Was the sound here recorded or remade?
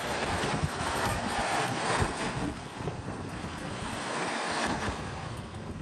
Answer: remade